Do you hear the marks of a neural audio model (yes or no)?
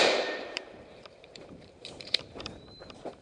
yes